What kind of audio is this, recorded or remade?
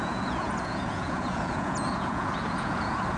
remade